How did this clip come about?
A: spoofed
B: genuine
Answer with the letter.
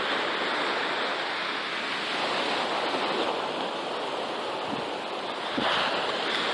B